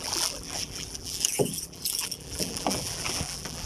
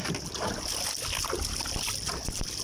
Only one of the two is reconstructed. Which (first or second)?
first